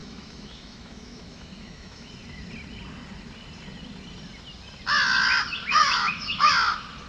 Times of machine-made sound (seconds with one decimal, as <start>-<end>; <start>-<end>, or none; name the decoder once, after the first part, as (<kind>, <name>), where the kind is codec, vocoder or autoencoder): 0.0-2.1 (autoencoder, DAC-VAE); 5.7-6.5